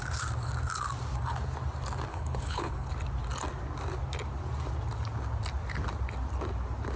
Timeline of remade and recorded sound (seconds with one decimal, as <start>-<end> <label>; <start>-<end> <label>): 0.0-2.1 recorded; 2.1-2.9 remade; 2.9-7.0 recorded